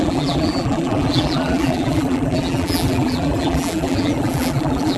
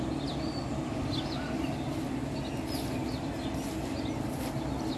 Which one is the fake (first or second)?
first